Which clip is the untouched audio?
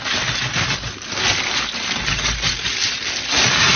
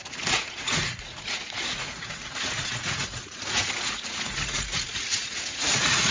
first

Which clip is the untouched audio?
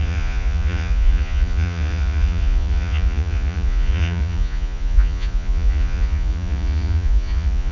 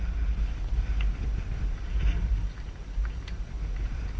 second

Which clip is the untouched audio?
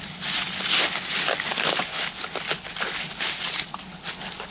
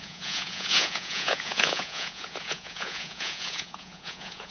first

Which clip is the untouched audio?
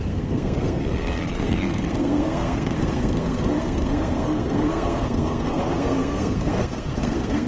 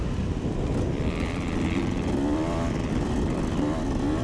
second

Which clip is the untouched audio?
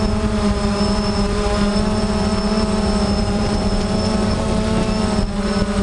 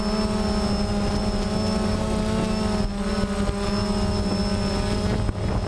second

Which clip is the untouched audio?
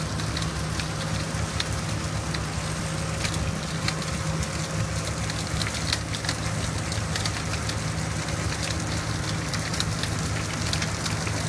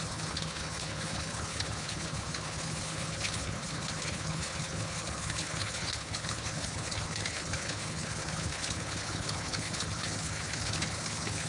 first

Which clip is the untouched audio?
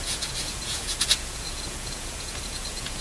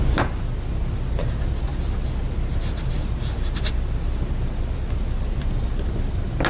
second